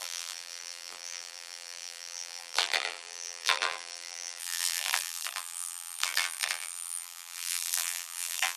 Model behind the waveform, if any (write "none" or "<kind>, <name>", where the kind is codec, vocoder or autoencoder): vocoder, BigVGAN v2